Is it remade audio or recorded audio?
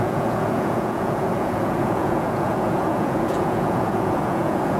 remade